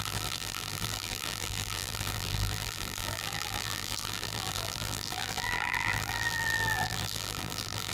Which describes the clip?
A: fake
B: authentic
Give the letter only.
A